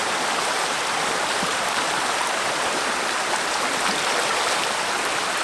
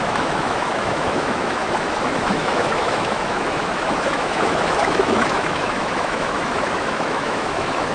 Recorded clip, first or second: first